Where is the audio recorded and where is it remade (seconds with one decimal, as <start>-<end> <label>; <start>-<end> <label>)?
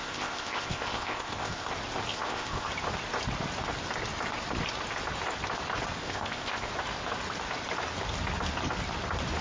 0.0-1.7 remade; 1.7-2.1 recorded; 2.1-2.7 remade; 2.7-6.0 recorded; 6.0-6.7 remade; 6.7-9.4 recorded